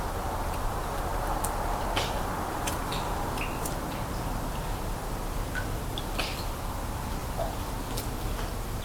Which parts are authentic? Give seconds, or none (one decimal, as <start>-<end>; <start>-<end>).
0.0-8.8